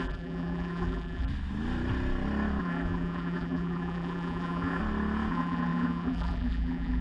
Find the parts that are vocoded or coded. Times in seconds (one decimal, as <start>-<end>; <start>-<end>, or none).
0.0-1.3; 2.6-4.8; 5.3-7.0